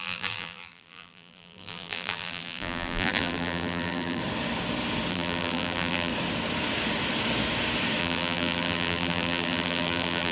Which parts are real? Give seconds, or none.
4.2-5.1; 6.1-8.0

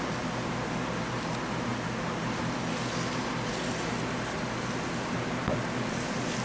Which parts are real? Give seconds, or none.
0.0-6.4